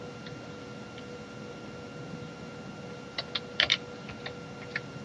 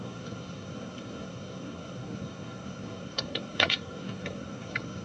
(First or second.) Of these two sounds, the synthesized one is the second